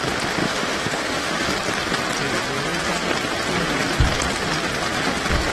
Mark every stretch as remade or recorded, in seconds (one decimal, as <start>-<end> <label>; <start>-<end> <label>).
0.0-0.4 recorded; 0.4-1.5 remade; 1.5-5.5 recorded